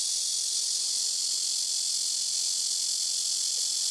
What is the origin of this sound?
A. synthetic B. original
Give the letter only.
B